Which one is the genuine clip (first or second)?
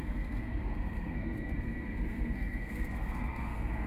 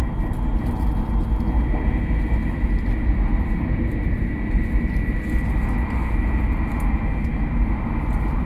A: second